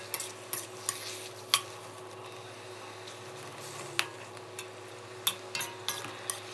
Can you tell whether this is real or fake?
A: real